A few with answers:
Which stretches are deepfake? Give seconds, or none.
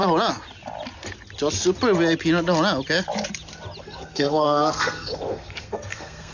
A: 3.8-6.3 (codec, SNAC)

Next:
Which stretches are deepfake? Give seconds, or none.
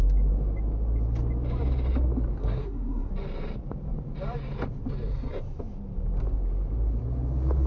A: 2.4-3.1 (codec, SNAC)